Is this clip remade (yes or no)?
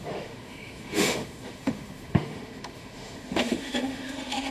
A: yes